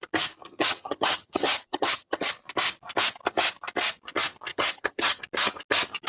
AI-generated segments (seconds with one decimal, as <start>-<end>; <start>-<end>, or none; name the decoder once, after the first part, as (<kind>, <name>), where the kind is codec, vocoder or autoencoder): 0.4-2.3 (vocoder, HiFi-GAN); 4.5-5.2